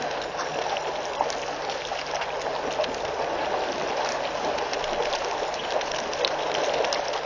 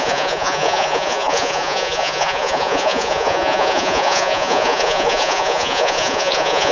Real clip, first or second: first